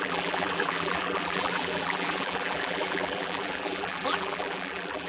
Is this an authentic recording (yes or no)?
no